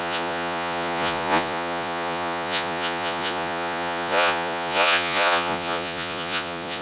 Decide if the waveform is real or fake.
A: fake